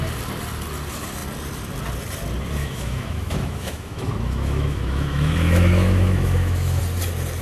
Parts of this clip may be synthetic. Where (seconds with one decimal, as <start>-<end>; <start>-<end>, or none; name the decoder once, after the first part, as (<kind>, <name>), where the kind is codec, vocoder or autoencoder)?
2.6-6.8 (autoencoder, DAC-VAE)